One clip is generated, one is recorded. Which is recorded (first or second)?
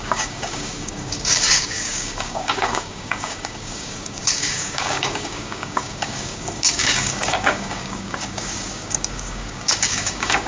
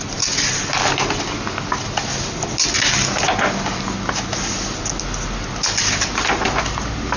second